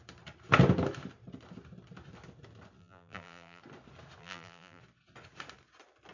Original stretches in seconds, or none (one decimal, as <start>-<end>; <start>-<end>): 0.0-2.8; 3.6-4.2; 4.8-6.1